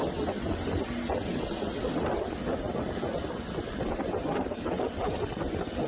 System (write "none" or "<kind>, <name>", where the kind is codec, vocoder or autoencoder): none